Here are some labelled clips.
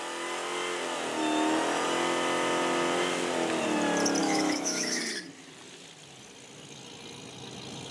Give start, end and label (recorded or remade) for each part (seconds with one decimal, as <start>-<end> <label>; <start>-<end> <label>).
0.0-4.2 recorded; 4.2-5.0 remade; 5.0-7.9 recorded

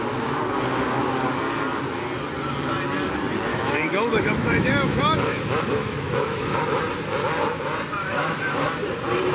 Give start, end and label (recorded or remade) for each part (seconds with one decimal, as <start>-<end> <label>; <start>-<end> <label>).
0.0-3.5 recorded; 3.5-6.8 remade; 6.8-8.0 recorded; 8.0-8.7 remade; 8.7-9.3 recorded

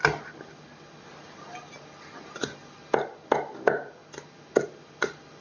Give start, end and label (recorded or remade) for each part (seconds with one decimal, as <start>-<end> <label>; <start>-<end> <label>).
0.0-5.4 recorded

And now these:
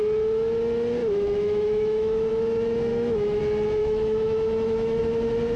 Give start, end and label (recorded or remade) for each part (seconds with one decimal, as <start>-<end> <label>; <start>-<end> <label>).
0.0-1.0 recorded; 1.0-2.3 remade; 2.3-2.9 recorded; 2.9-3.4 remade; 3.4-3.8 recorded; 3.8-5.0 remade; 5.0-5.6 recorded

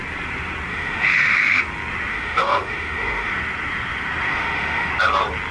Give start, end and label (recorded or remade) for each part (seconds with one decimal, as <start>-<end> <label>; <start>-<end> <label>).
0.0-0.7 recorded; 0.7-1.6 remade; 1.6-2.1 recorded; 2.1-3.3 remade; 3.3-4.3 recorded; 4.3-4.9 remade; 4.9-5.5 recorded

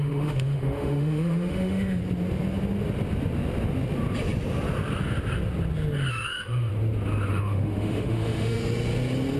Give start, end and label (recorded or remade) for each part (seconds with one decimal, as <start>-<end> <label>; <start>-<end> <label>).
0.0-2.0 remade; 2.0-6.1 recorded; 6.1-6.7 remade; 6.7-7.3 recorded; 7.3-8.6 remade; 8.6-9.4 recorded